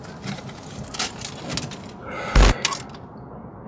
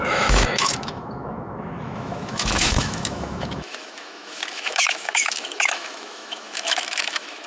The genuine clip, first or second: first